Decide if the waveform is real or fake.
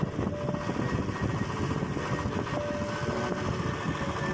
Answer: real